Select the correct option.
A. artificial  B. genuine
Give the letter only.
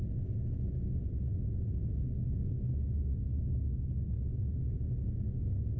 B